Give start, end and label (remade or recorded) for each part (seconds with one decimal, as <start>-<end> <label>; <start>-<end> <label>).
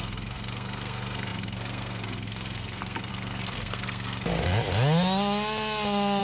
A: 0.0-4.3 remade; 4.3-6.2 recorded